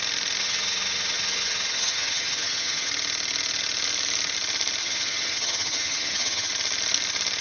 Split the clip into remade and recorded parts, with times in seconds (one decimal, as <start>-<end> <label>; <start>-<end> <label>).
0.0-0.4 recorded; 0.4-2.9 remade; 2.9-4.8 recorded; 4.8-6.5 remade; 6.5-7.4 recorded